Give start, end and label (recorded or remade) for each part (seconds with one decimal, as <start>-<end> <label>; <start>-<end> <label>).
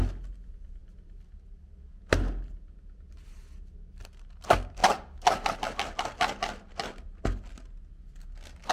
0.0-8.7 recorded